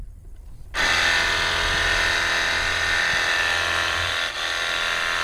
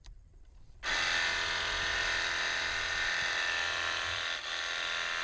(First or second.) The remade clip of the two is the second